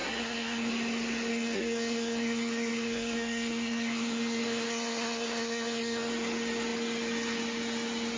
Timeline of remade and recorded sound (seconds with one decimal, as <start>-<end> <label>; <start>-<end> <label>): 0.0-0.7 remade; 0.7-1.3 recorded; 1.3-6.1 remade; 6.1-8.2 recorded